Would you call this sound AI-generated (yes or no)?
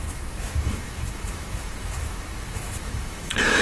yes